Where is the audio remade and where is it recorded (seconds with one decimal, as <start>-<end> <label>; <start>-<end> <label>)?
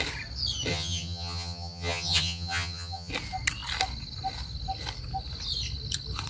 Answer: 0.0-0.7 recorded; 0.7-3.1 remade; 3.1-6.3 recorded